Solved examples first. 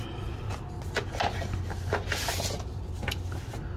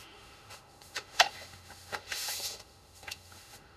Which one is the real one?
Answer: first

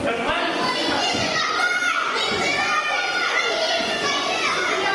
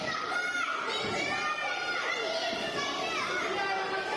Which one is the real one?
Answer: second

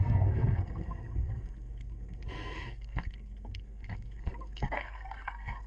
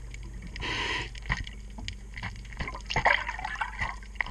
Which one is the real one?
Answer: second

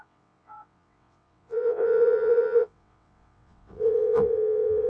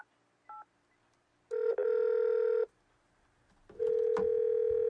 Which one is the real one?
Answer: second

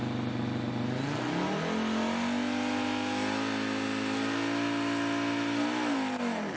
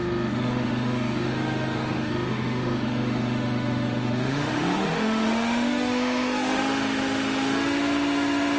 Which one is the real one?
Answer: first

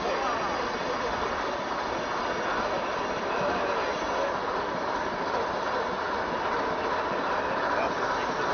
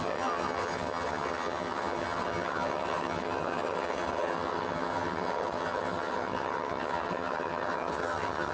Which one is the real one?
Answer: first